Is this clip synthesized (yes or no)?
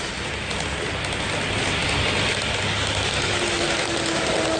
no